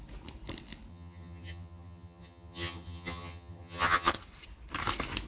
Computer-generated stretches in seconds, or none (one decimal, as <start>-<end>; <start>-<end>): 0.9-4.1